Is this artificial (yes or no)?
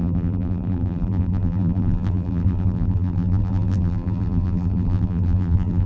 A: yes